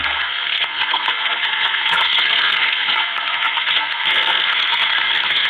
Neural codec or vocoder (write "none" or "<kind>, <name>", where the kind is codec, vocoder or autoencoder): codec, SNAC